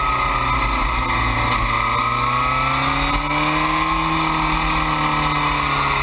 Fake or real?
real